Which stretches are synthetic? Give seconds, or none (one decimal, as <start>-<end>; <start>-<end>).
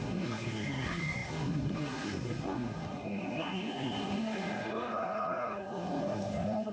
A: 0.0-6.7